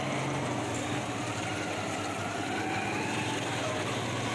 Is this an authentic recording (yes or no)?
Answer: yes